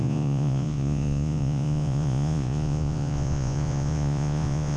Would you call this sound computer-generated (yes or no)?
yes